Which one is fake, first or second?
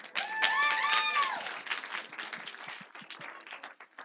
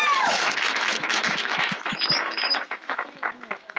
second